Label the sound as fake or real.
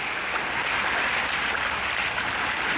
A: real